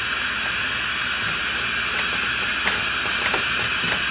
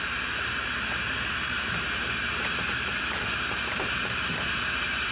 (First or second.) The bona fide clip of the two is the first